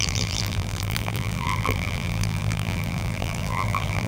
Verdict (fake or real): fake